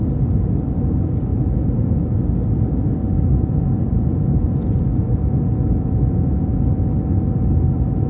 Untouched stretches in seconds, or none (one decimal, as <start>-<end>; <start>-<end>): 0.0-1.3; 2.1-3.3; 6.6-8.1